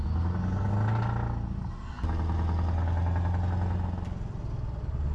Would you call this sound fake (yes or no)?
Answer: no